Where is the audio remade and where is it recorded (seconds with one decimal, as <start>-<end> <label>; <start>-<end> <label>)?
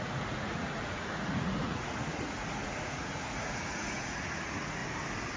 0.0-4.8 remade; 4.8-5.4 recorded